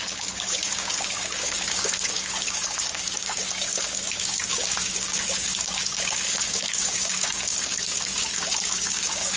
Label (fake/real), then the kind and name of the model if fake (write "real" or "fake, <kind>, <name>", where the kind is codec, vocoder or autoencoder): fake, codec, DAC